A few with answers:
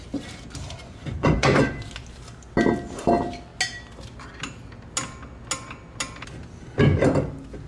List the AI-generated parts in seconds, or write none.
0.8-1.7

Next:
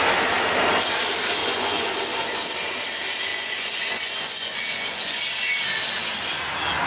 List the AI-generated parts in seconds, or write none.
1.4-2.0; 3.3-5.2

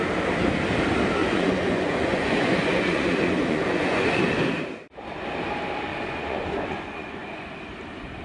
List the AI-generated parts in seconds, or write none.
1.2-4.2; 5.9-7.5

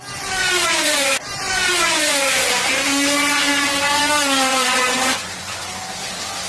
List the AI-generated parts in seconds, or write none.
0.4-4.1; 4.5-5.6

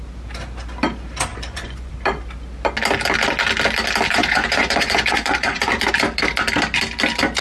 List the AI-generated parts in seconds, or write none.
1.3-1.9; 4.2-5.9

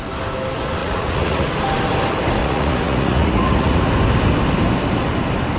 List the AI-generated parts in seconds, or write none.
0.8-1.5; 2.4-3.9